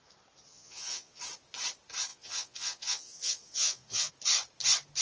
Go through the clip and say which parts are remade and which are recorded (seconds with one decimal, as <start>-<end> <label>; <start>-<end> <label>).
0.0-0.5 recorded; 0.5-1.2 remade; 1.2-2.1 recorded; 2.1-4.1 remade; 4.1-5.0 recorded